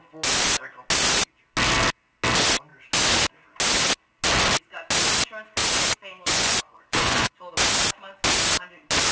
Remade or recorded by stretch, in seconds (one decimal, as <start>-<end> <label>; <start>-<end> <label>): 0.0-5.6 recorded; 5.6-7.5 remade; 7.5-9.1 recorded